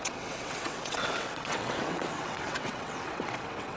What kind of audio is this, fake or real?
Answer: fake